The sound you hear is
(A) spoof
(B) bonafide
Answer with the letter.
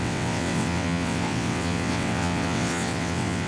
A